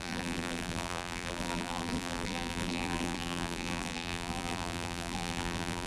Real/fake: fake